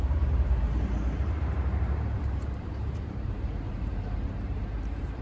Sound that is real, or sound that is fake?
fake